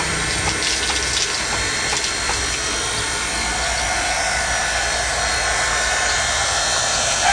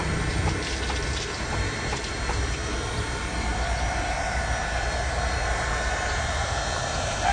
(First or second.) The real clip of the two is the first